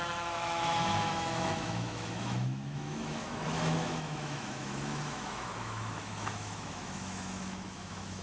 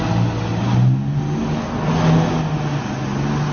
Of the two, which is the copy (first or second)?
first